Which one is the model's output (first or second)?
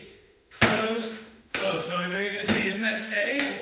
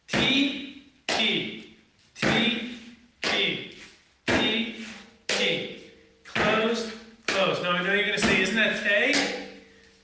first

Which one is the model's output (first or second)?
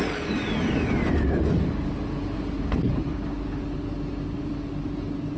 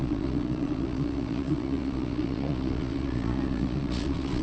second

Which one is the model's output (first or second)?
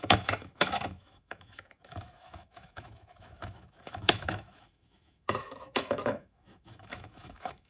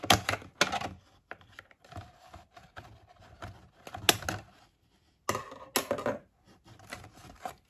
first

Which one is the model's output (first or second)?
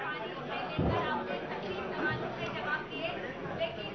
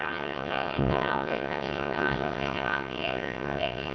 second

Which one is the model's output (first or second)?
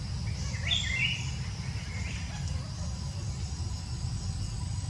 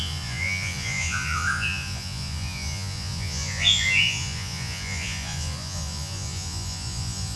second